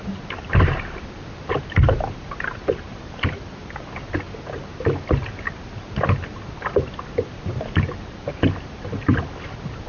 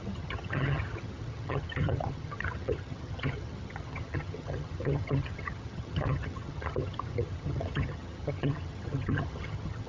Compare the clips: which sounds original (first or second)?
first